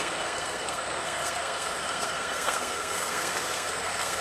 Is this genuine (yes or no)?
no